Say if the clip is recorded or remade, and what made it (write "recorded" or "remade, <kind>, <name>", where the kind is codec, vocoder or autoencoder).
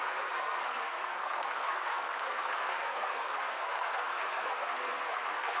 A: remade, codec, SNAC